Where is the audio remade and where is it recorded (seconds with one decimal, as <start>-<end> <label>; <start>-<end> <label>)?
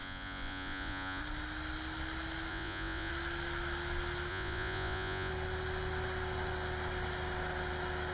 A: 0.0-1.2 remade; 1.2-2.5 recorded; 2.5-3.1 remade; 3.1-4.3 recorded; 4.3-5.3 remade; 5.3-8.1 recorded